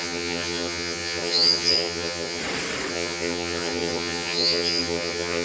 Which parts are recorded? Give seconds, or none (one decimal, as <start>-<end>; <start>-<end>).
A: 2.4-2.9